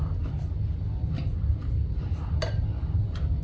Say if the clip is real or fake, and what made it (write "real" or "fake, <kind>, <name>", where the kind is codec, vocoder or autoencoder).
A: real